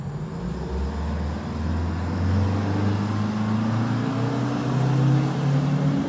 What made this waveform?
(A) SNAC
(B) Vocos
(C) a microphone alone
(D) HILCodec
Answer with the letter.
C